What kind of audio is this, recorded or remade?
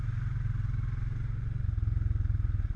recorded